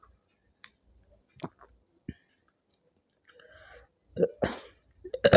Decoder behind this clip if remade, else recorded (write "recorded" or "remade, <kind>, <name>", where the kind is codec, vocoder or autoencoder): recorded